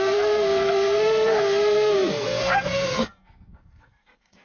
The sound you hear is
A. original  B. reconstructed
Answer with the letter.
B